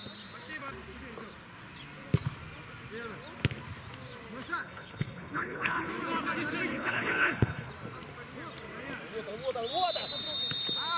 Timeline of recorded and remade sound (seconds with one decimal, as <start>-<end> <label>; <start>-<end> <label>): 0.0-4.6 recorded; 4.6-5.9 remade; 5.9-6.7 recorded; 6.7-7.7 remade; 7.7-11.0 recorded